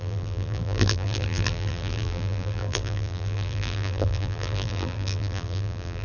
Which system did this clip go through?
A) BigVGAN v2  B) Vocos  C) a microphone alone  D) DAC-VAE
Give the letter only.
A